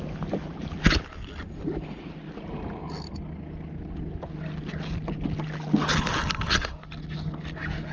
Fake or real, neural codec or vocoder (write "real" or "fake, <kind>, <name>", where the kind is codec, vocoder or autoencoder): real